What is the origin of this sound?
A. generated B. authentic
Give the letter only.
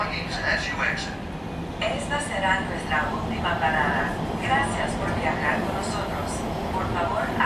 B